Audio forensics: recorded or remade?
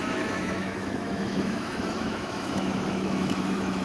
remade